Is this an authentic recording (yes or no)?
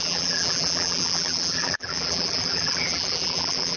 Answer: no